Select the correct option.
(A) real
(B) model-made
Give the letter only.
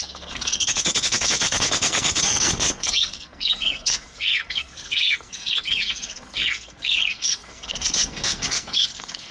B